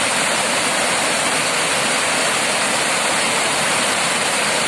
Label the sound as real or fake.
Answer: real